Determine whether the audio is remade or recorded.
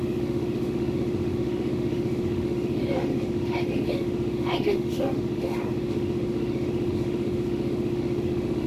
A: remade